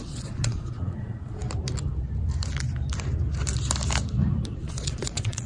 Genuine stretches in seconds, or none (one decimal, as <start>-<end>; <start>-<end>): 1.4-4.6